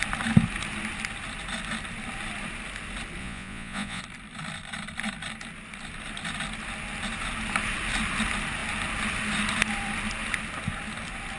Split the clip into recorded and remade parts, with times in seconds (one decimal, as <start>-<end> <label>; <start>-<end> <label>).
0.0-3.2 recorded; 3.2-4.0 remade; 4.0-11.4 recorded